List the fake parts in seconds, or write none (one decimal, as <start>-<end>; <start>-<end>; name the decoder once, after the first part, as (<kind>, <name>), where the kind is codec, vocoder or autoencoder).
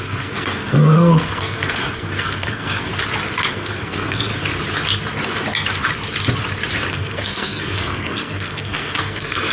0.0-2.9 (codec, SNAC); 3.5-4.3; 6.9-9.5